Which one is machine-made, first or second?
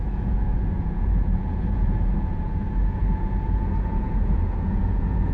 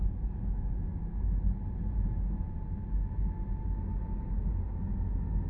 first